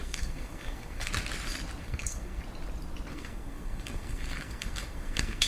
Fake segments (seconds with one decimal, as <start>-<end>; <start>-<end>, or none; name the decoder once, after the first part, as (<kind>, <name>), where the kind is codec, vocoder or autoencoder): 0.0-1.1 (codec, SNAC); 1.8-2.4; 3.1-5.5